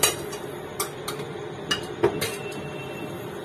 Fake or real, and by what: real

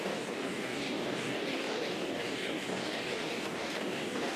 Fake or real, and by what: fake, codec, DAC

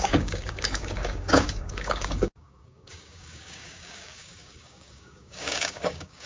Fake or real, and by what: fake, codec, DAC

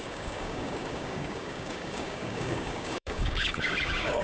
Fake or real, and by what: fake, codec, DAC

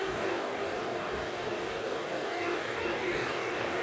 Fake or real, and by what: fake, codec, DAC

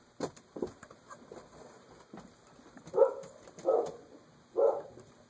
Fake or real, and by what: real